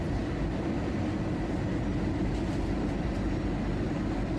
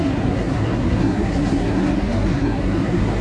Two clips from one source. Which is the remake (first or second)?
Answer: second